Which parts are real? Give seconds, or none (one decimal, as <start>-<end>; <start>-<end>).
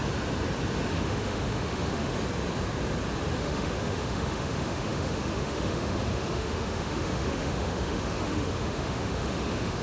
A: 0.0-0.9; 2.1-3.4